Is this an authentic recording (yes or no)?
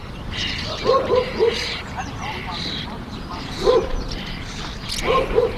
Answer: no